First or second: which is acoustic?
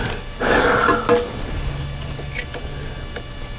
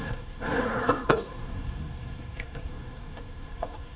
first